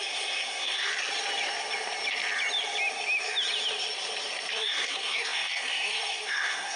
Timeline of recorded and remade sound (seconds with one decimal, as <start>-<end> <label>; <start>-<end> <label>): 0.0-0.9 remade; 0.9-4.5 recorded; 4.5-6.8 remade